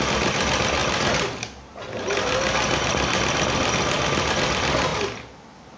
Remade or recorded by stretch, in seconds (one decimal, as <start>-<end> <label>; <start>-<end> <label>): 0.0-0.8 remade; 0.8-4.3 recorded; 4.3-4.9 remade; 4.9-5.8 recorded